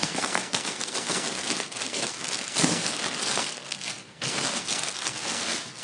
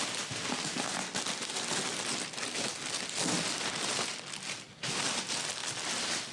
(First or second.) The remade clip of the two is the first